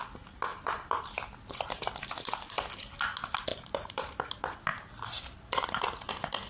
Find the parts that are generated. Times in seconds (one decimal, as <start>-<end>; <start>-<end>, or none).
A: 0.5-2.1; 3.5-4.2; 4.7-6.1